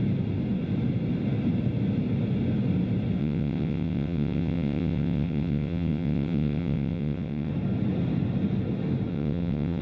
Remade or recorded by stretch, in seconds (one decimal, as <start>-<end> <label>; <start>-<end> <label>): 0.0-3.2 recorded; 3.2-7.5 remade; 7.5-9.1 recorded; 9.1-9.8 remade